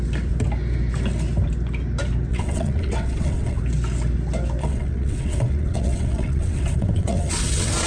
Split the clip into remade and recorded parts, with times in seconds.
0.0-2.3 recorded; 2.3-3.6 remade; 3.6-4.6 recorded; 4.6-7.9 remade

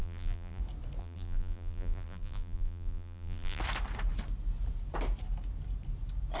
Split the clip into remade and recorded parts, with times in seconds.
0.0-0.6 remade; 0.6-1.0 recorded; 1.0-3.6 remade; 3.6-6.4 recorded

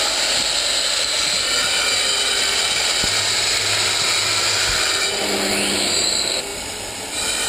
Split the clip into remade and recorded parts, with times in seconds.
0.0-6.5 recorded; 6.5-7.5 remade

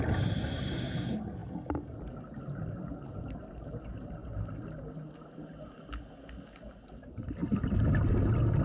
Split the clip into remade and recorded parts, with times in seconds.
0.0-8.6 recorded

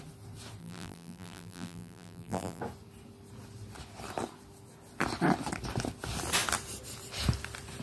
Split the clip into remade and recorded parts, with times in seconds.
0.0-0.6 recorded; 0.6-2.6 remade; 2.6-7.8 recorded

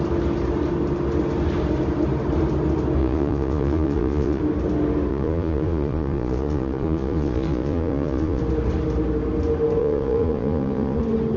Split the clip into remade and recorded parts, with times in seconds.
0.0-3.0 recorded; 3.0-4.4 remade; 4.4-5.1 recorded; 5.1-8.4 remade; 8.4-9.8 recorded; 9.8-11.0 remade; 11.0-11.4 recorded

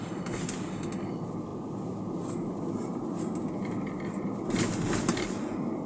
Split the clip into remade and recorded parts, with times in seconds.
0.0-5.9 recorded